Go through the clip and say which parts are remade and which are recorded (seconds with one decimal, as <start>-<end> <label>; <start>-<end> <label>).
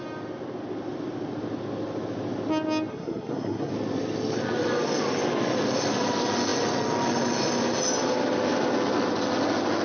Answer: 0.0-2.9 recorded; 2.9-3.7 remade; 3.7-9.8 recorded